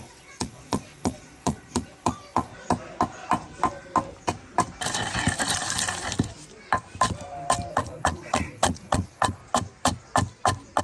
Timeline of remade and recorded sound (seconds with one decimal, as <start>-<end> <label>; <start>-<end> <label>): 0.0-2.5 remade; 2.5-7.7 recorded; 7.7-9.4 remade; 9.4-10.8 recorded